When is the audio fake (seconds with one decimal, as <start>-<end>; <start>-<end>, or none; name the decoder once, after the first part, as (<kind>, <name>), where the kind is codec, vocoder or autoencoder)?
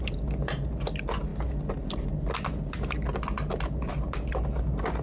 none